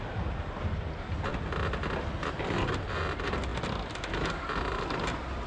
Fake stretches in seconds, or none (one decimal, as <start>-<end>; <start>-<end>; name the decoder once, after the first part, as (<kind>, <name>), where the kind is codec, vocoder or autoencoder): none

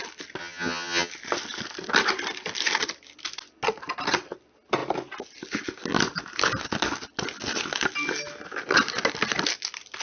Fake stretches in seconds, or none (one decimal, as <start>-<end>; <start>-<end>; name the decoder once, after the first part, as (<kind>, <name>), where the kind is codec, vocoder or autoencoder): 0.4-1.1 (vocoder, HiFi-GAN)

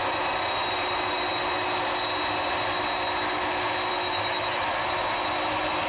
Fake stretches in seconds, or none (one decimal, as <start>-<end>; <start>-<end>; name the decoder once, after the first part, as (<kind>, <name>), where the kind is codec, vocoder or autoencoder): 3.9-4.8 (autoencoder, DAC-VAE)

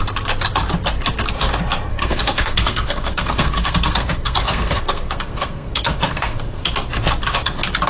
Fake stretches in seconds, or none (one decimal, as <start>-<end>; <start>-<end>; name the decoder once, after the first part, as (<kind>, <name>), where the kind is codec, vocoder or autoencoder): 1.9-6.6 (codec, SNAC)

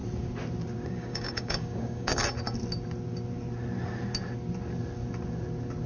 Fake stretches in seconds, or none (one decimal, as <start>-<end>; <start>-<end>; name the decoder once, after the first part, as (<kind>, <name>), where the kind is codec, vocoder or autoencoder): 0.9-2.2 (codec, DAC)

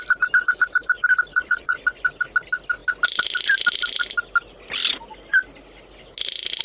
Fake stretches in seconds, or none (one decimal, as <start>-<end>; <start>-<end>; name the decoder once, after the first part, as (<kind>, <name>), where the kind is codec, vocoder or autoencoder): 1.3-1.8 (vocoder, Vocos)

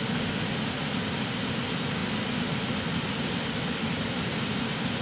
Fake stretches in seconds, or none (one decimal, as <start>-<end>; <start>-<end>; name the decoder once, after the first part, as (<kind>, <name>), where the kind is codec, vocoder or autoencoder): none